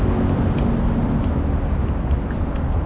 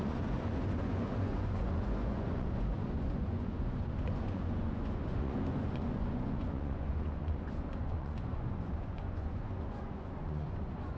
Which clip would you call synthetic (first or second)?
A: second